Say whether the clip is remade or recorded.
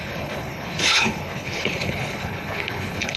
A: remade